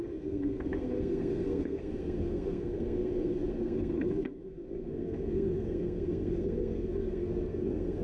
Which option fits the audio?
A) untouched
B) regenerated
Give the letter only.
B